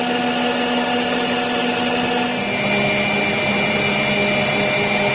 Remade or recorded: recorded